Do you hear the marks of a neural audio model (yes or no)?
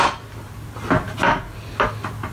no